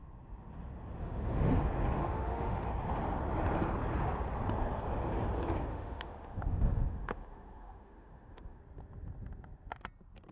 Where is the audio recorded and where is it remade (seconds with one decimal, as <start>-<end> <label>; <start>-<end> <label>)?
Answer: 0.0-1.0 recorded; 1.0-1.5 remade; 1.5-2.0 recorded; 2.0-2.7 remade; 2.7-5.7 recorded; 5.7-8.6 remade; 8.6-10.3 recorded